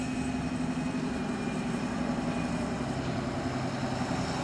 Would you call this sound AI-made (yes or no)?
no